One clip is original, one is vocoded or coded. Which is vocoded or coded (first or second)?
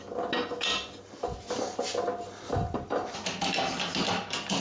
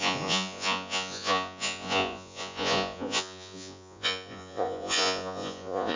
second